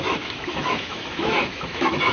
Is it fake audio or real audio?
fake